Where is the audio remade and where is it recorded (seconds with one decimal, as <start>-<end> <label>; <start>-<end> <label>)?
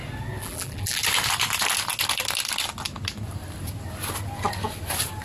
0.0-0.4 recorded; 0.4-1.0 remade; 1.0-5.2 recorded